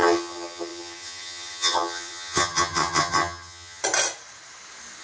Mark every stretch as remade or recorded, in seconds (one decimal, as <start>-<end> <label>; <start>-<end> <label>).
0.0-3.8 remade; 3.8-5.0 recorded